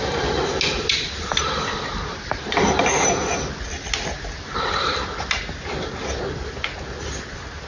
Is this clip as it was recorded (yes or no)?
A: yes